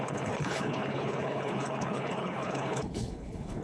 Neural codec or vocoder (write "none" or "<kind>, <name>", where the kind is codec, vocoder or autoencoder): codec, HILCodec